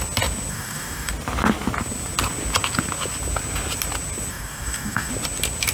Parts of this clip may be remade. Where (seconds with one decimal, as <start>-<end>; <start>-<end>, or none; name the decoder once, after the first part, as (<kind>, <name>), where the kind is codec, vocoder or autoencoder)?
0.5-1.1 (codec, DAC); 4.3-5.1